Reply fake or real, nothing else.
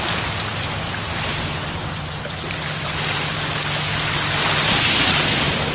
real